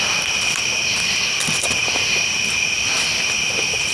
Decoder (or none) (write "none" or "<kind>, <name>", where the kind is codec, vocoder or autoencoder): none